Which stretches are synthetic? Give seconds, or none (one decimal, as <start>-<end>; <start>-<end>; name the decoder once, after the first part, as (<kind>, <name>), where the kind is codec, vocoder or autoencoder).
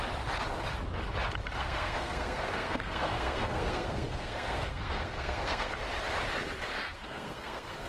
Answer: 1.6-5.7 (codec, SNAC); 6.7-7.9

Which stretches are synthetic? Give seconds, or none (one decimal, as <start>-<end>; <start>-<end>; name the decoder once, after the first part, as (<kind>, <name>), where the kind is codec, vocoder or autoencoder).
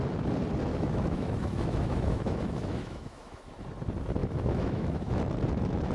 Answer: 0.7-3.5 (autoencoder, DAC-VAE); 4.2-5.2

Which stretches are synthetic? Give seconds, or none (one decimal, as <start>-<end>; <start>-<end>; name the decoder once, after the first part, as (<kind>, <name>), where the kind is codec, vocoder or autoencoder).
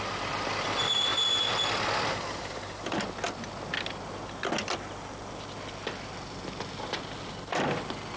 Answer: none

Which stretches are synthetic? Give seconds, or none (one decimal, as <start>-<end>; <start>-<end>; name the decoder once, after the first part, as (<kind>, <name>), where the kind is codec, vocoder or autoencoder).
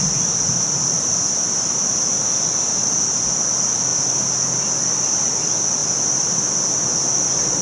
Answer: none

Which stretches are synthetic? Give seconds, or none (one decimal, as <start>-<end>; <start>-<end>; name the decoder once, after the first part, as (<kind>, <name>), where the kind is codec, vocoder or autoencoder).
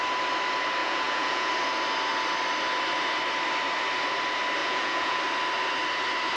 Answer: 0.8-1.5 (vocoder, Vocos); 4.6-5.2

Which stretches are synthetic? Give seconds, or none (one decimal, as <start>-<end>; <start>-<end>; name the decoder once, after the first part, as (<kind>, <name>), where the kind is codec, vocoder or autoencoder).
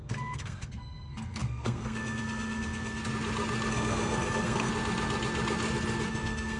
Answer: 0.0-3.0 (codec, SNAC); 3.7-4.7; 6.1-6.6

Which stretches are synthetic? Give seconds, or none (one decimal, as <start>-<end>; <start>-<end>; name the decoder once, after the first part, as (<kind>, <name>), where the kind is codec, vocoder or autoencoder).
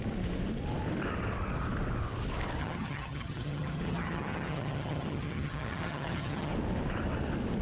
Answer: 2.6-6.5 (vocoder, HiFi-GAN)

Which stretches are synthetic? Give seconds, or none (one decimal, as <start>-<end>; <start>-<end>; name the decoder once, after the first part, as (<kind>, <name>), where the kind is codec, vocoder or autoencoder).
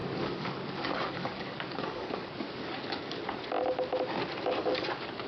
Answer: 0.0-3.2 (codec, DAC); 4.6-5.3